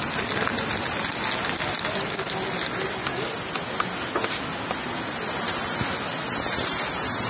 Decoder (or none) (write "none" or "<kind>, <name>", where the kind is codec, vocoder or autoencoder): none